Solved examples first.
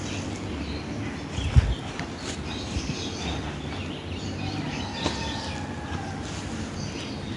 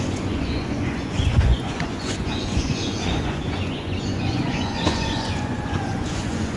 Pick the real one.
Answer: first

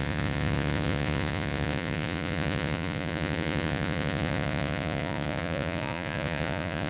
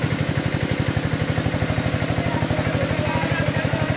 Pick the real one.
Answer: second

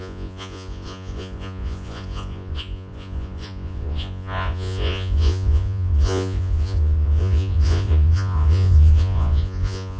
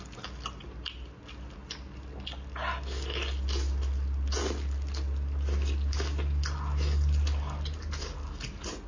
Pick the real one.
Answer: second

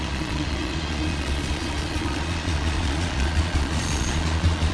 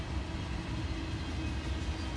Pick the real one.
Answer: second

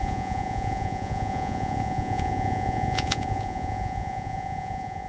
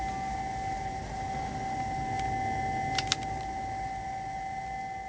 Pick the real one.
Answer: second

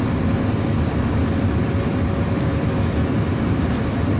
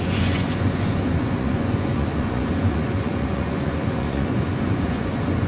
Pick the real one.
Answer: first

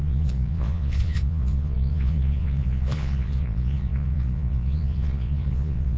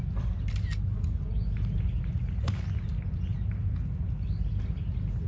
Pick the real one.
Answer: second